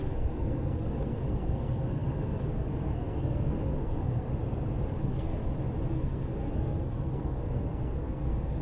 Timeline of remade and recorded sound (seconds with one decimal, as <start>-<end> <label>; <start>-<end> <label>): 0.0-4.3 remade; 4.3-5.0 recorded; 5.0-5.4 remade; 5.4-5.9 recorded; 5.9-8.6 remade